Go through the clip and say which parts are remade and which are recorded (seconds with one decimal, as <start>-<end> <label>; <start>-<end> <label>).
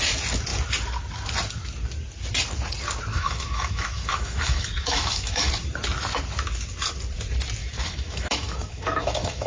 0.0-3.1 recorded; 3.1-5.5 remade; 5.5-7.6 recorded; 7.6-9.5 remade